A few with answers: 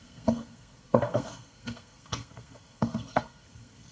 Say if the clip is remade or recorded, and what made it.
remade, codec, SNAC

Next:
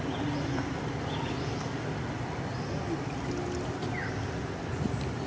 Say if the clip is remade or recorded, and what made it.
recorded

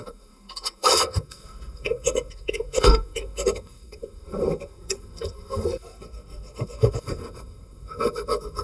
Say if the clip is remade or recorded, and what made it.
remade, codec, SNAC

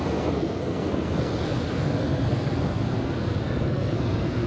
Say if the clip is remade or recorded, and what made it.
remade, codec, SNAC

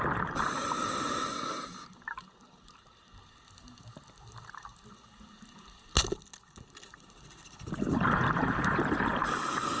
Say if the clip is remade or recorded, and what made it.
recorded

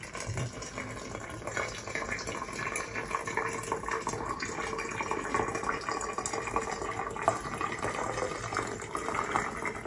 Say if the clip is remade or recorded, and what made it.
recorded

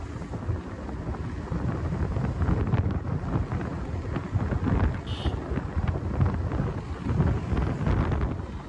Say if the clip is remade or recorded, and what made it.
recorded